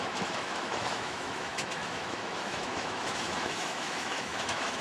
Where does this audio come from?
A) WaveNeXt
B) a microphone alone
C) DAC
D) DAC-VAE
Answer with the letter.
D